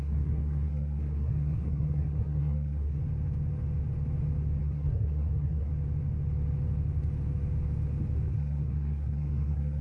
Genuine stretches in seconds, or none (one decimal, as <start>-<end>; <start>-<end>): 3.0-4.6; 5.7-8.3